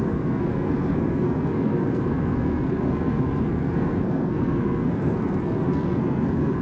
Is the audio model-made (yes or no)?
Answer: yes